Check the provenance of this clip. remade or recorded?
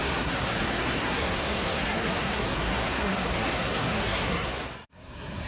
remade